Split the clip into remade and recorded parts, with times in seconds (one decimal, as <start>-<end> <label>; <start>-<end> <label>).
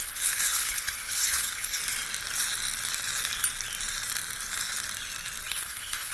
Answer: 0.0-1.8 remade; 1.8-5.5 recorded; 5.5-6.1 remade